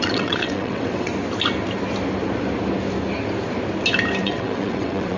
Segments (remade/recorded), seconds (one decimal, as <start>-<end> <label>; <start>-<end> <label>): 0.0-1.1 remade; 1.1-4.2 recorded; 4.2-5.2 remade

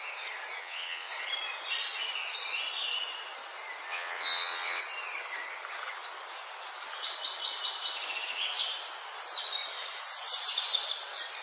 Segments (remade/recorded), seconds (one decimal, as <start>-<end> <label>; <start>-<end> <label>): 0.0-0.6 recorded; 0.6-1.1 remade; 1.1-3.9 recorded; 3.9-4.8 remade; 4.8-11.4 recorded

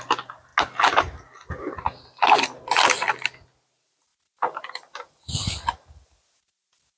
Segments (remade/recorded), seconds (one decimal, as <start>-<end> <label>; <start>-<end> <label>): 0.0-7.0 recorded

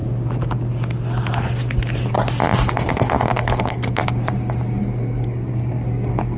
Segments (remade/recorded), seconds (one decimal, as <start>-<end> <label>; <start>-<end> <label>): 0.0-2.7 recorded; 2.7-4.0 remade; 4.0-4.8 recorded; 4.8-6.4 remade